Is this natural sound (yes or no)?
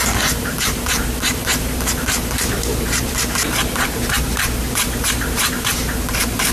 no